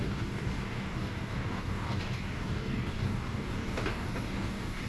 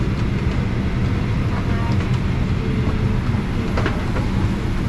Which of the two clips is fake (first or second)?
first